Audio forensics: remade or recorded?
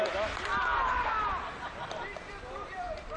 recorded